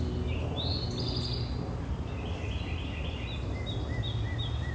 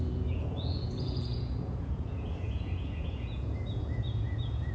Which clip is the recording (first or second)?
first